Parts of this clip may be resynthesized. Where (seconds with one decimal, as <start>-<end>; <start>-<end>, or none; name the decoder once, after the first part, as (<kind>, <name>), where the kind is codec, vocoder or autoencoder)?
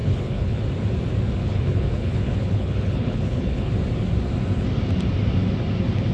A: 0.0-0.6 (codec, HILCodec); 1.4-3.7